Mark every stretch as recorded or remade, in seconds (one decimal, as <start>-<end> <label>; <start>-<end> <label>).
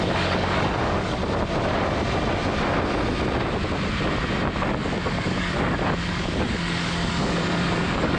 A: 0.0-1.2 remade; 1.2-4.7 recorded; 4.7-8.2 remade